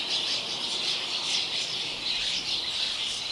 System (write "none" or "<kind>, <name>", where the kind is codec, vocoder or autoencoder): none